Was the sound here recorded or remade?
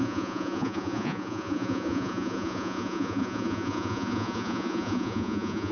remade